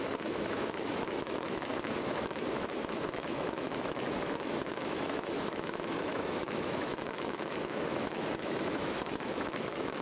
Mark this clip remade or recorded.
remade